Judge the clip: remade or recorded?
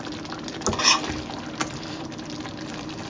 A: recorded